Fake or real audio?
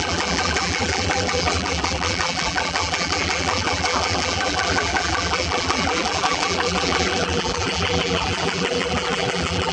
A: fake